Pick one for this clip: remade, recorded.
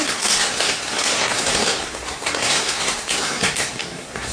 remade